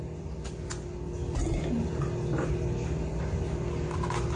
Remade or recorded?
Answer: recorded